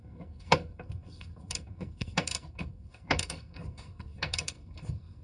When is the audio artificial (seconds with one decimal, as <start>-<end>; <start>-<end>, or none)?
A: 0.0-5.2